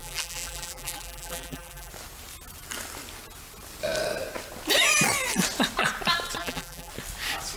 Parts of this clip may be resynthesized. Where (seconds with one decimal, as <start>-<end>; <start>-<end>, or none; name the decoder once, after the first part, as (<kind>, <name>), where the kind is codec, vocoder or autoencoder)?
0.0-1.9 (vocoder, BigVGAN v2); 6.4-6.9